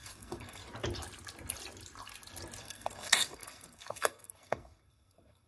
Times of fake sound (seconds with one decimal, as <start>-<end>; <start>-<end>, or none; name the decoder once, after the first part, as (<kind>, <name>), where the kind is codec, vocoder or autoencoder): 0.0-0.6 (codec, SNAC); 2.6-5.5